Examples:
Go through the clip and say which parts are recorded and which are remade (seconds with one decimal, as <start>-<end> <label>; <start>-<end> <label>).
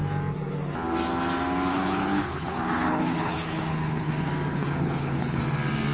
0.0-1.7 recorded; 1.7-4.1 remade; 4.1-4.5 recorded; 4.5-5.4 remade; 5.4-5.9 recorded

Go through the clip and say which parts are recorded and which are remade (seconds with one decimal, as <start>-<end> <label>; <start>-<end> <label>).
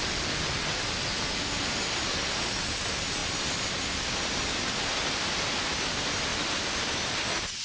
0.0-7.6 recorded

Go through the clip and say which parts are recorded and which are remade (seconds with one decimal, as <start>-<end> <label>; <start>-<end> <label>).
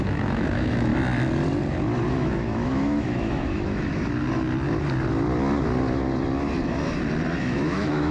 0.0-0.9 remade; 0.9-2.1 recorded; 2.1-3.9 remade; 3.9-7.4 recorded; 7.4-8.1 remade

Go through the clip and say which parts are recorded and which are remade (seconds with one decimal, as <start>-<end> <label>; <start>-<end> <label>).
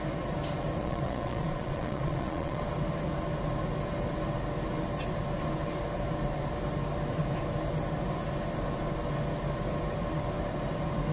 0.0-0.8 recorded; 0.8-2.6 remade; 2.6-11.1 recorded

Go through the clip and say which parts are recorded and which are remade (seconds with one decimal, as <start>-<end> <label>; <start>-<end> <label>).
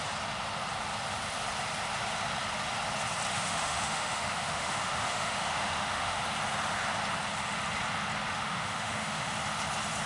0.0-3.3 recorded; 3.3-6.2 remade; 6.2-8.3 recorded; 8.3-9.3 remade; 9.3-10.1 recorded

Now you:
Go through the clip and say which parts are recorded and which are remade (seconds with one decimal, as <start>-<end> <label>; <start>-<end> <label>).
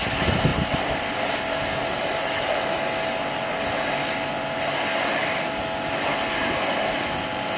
0.0-0.5 recorded; 0.5-1.3 remade; 1.3-7.6 recorded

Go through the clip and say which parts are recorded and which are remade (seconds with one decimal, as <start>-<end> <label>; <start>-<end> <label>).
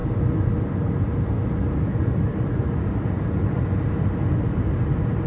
0.0-5.3 recorded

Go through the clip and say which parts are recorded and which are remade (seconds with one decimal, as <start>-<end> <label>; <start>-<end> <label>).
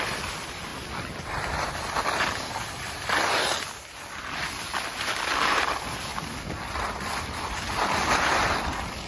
0.0-9.1 recorded